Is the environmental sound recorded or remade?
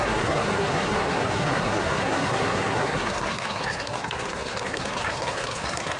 remade